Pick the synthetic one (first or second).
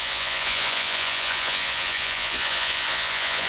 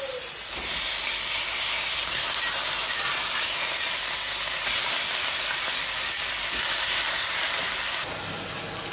first